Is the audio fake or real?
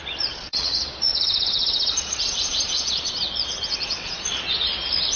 fake